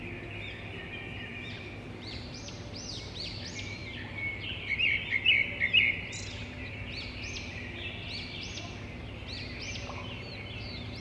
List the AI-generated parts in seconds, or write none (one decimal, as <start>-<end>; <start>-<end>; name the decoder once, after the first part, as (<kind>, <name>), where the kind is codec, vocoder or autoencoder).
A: 1.3-2.5 (vocoder, BigVGAN v2); 6.4-7.1